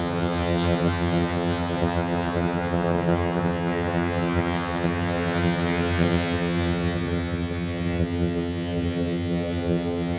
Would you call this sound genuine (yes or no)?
no